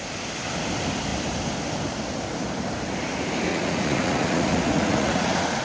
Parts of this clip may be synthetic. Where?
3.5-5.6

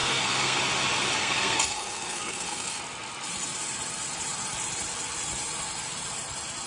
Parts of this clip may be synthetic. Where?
0.0-0.6; 1.2-2.8

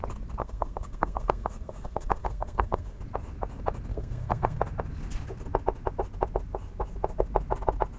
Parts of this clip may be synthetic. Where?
0.4-3.0; 3.9-4.6